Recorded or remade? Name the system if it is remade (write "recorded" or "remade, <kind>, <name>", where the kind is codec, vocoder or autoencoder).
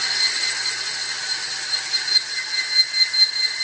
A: recorded